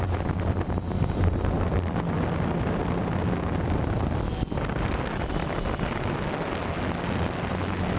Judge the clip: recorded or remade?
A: recorded